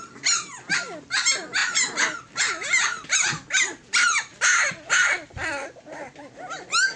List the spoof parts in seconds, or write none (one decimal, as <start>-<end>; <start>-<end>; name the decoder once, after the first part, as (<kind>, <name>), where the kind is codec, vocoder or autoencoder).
1.6-2.7 (vocoder, BigVGAN v2); 4.3-6.3